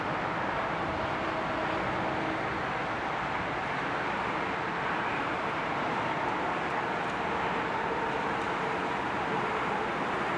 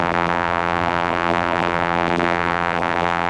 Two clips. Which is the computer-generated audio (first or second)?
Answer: second